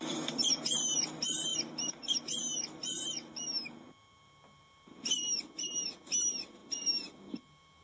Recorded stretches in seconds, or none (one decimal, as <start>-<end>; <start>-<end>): 0.0-7.8